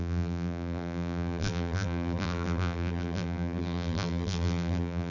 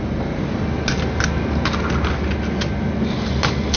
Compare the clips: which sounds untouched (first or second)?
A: second